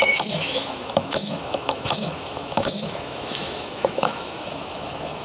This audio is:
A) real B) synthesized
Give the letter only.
B